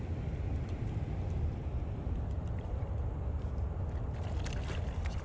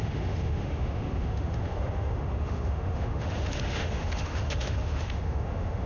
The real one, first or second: first